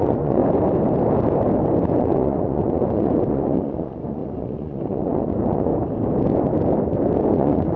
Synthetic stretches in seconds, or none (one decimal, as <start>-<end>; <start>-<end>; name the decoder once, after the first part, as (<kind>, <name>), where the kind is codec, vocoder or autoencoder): 0.0-0.4 (vocoder, Vocos); 2.0-5.7; 7.3-7.8